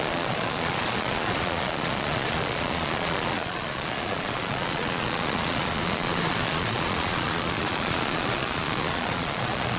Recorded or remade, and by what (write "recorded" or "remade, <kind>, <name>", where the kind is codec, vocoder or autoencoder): remade, vocoder, Vocos